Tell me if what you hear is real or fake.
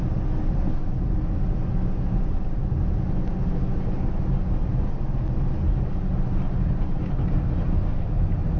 real